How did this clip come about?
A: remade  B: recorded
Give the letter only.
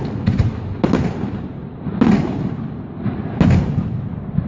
B